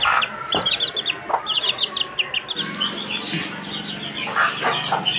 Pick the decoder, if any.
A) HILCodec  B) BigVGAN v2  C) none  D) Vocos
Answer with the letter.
C